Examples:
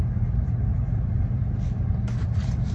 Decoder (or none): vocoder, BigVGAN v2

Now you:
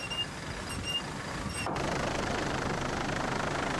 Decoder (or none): none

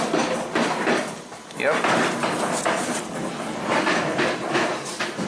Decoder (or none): none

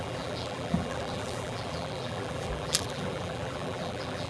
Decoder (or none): vocoder, BigVGAN v2